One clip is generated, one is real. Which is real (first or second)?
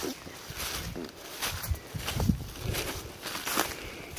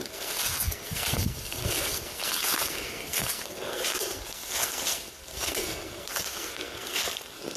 first